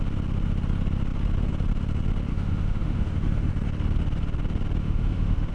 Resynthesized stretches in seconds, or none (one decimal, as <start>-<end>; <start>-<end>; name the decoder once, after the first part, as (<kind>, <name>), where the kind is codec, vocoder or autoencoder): 2.3-3.5 (autoencoder, DAC-VAE); 4.8-5.5